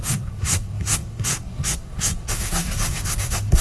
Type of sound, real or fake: fake